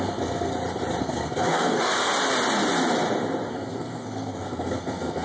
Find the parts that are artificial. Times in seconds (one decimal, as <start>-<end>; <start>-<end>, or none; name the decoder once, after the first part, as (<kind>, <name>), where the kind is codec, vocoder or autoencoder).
0.0-0.5 (codec, SNAC); 1.0-2.1; 3.5-5.2